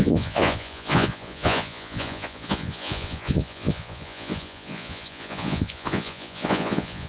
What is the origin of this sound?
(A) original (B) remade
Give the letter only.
B